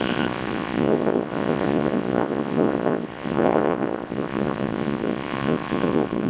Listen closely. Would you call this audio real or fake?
fake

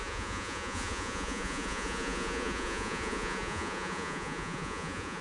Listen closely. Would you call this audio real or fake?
fake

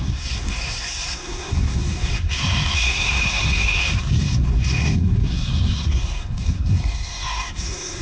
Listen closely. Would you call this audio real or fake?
fake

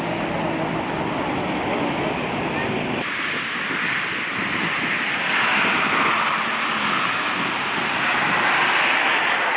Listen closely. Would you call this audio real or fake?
real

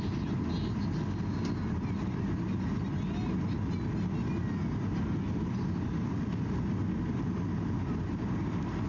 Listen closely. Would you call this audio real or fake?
real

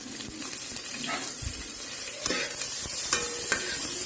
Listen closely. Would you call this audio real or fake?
real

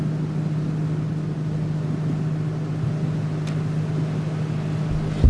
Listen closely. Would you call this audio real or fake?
real